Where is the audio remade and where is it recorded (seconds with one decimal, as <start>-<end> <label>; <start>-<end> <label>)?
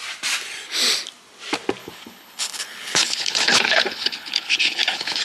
0.0-1.8 recorded; 1.8-5.2 remade